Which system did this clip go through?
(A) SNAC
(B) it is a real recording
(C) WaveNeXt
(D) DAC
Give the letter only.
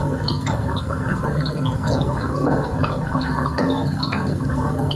A